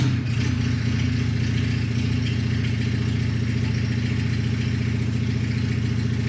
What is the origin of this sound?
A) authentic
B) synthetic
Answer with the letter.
A